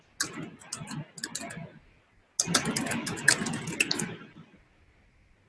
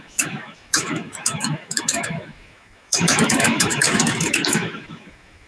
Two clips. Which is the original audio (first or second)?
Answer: first